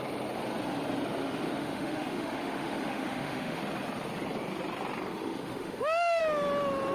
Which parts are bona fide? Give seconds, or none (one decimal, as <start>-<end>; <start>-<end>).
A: 0.0-1.2; 3.6-5.1; 6.2-6.9